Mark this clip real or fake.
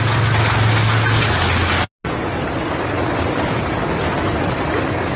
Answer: real